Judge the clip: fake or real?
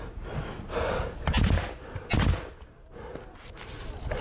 real